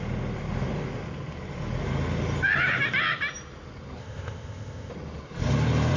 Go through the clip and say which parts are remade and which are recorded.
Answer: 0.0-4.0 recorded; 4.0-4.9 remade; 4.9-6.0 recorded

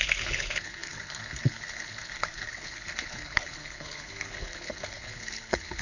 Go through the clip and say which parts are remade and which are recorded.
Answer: 0.0-5.8 remade

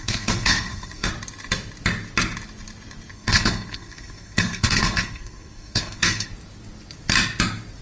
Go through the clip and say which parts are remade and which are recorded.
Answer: 0.0-1.1 remade; 1.1-3.1 recorded; 3.1-6.3 remade; 6.3-7.8 recorded